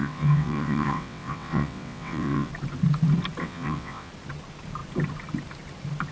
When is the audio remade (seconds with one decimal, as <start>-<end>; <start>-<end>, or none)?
0.0-2.5; 3.4-4.1